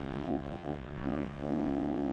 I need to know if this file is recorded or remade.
remade